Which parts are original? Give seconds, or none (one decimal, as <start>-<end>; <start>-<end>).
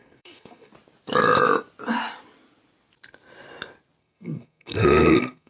0.7-4.0